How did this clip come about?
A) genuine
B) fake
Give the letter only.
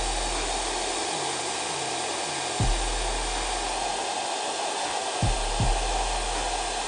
A